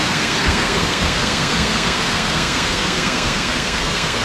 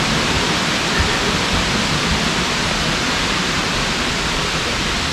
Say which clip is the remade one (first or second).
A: first